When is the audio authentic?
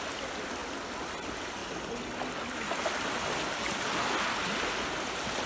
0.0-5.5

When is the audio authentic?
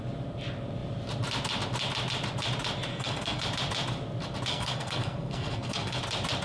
0.0-2.9; 3.4-4.5; 6.0-6.4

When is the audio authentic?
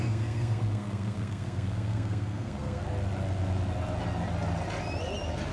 2.8-5.5